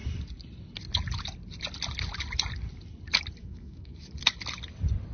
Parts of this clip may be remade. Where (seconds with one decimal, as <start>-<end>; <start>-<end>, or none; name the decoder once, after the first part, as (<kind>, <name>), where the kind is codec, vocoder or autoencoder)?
3.4-4.1 (autoencoder, DAC-VAE)